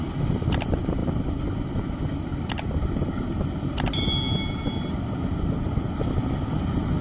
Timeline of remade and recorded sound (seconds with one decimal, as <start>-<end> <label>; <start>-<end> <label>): 0.0-7.0 recorded